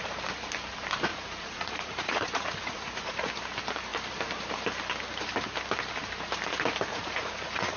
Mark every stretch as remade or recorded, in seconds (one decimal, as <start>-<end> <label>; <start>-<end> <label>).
0.0-1.1 recorded; 1.1-3.3 remade; 3.3-6.9 recorded; 6.9-7.8 remade